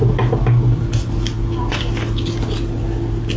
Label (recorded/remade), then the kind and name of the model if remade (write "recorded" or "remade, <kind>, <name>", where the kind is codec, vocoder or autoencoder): recorded